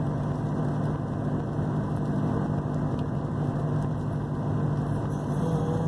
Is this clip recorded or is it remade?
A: recorded